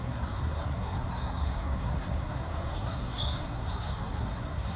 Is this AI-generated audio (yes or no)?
yes